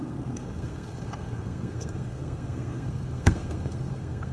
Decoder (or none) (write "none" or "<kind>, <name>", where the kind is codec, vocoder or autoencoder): codec, SNAC